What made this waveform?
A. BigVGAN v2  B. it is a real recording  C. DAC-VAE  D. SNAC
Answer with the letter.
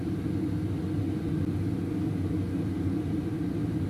B